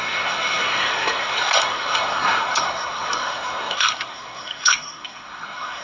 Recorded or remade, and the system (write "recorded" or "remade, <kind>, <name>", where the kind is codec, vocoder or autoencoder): remade, codec, SNAC